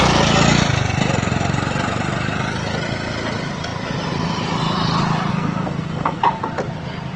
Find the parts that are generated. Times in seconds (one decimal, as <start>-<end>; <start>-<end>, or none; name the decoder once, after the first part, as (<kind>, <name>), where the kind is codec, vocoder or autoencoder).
5.3-6.2 (codec, SNAC)